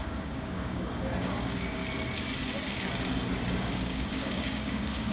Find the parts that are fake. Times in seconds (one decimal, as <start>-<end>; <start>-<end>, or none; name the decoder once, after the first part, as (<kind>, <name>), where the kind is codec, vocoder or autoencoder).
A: 0.0-1.8 (codec, DAC); 3.7-5.1

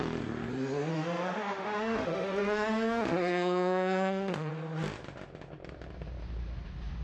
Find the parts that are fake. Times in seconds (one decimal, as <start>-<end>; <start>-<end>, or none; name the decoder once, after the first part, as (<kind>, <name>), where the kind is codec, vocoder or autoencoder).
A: 0.9-4.5 (autoencoder, DAC-VAE)

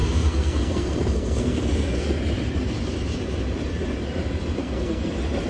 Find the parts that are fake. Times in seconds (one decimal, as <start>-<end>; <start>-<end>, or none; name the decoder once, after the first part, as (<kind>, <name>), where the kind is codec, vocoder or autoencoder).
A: 0.0-2.2 (codec, SNAC); 4.6-5.1

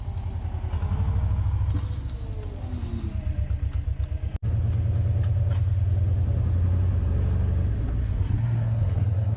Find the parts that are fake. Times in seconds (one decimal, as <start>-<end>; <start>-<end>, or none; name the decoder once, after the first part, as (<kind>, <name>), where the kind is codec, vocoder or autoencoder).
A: 8.0-9.4 (codec, SNAC)